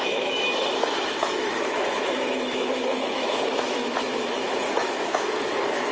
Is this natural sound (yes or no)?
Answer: no